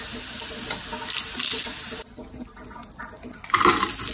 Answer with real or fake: real